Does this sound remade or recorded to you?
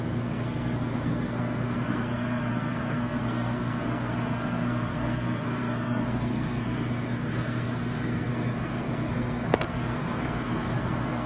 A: remade